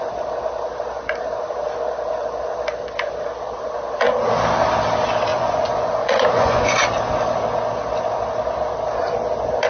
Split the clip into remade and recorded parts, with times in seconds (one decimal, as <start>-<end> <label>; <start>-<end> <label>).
0.0-5.3 recorded; 5.3-6.8 remade; 6.8-9.7 recorded